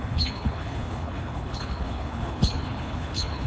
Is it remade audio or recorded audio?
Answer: remade